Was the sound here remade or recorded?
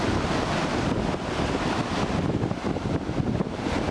recorded